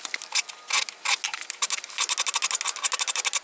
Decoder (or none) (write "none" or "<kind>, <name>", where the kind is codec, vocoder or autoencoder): none